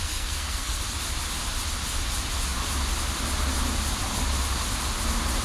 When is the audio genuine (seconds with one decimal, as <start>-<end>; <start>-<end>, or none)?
0.8-5.4